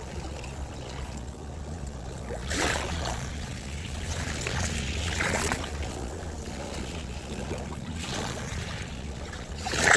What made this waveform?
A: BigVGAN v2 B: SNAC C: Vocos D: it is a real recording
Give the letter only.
C